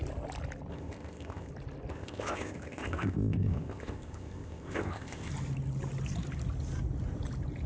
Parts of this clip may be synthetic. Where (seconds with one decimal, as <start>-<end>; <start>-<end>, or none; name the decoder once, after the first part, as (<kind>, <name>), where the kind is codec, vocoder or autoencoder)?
0.7-1.5 (codec, ZipCodec); 1.9-5.3